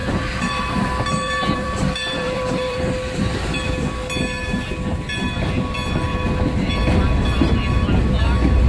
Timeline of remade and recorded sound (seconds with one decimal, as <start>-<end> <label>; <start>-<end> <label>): 0.0-3.6 remade; 3.6-6.1 recorded; 6.1-6.7 remade; 6.7-8.7 recorded

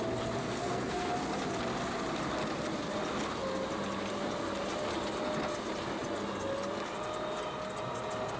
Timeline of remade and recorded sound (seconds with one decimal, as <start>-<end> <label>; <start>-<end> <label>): 0.0-0.4 recorded; 0.4-1.1 remade; 1.1-8.4 recorded

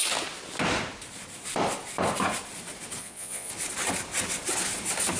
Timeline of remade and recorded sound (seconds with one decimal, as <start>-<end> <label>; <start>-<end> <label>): 0.0-3.0 recorded; 3.0-3.5 remade; 3.5-5.2 recorded